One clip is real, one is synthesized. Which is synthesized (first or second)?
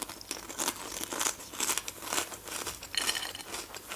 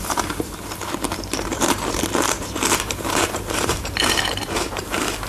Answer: second